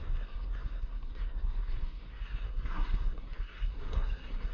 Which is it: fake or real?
fake